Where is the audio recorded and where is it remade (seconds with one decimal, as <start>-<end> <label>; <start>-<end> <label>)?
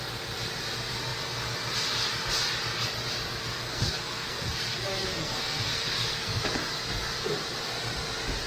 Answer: 0.0-3.4 recorded; 3.4-6.4 remade; 6.4-8.5 recorded